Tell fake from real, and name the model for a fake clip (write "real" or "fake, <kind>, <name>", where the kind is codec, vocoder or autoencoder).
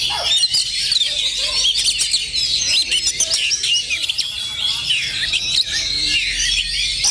real